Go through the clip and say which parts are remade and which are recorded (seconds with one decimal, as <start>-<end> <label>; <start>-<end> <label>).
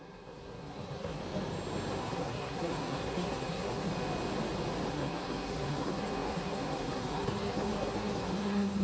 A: 0.0-1.2 remade; 1.2-2.0 recorded; 2.0-3.9 remade; 3.9-4.9 recorded; 4.9-8.8 remade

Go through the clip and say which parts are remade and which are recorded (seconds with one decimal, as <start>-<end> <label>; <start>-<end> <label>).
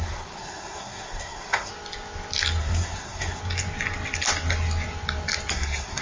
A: 0.0-1.7 remade; 1.7-2.6 recorded; 2.6-3.4 remade; 3.4-5.5 recorded; 5.5-6.0 remade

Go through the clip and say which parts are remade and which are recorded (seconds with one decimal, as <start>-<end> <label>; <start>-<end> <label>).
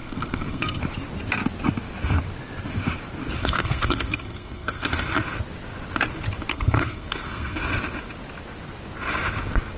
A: 0.0-0.8 remade; 0.8-3.4 recorded; 3.4-4.9 remade; 4.9-6.5 recorded; 6.5-7.6 remade; 7.6-9.8 recorded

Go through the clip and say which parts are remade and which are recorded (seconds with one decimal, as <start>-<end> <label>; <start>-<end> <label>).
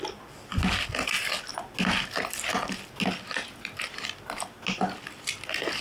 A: 0.0-5.8 recorded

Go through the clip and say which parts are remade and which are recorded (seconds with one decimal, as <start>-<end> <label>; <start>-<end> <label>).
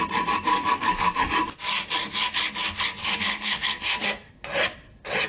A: 0.0-0.5 recorded; 0.5-1.2 remade; 1.2-3.0 recorded; 3.0-4.3 remade; 4.3-5.3 recorded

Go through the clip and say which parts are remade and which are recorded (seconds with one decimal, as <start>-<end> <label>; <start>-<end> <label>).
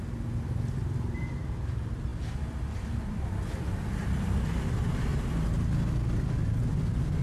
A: 0.0-7.2 recorded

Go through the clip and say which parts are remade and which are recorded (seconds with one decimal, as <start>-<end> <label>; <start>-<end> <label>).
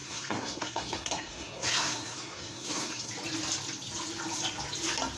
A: 0.0-3.1 remade; 3.1-5.2 recorded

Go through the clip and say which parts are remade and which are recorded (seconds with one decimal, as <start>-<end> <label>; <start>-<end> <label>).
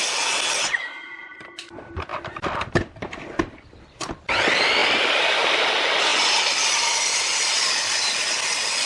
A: 0.0-8.9 recorded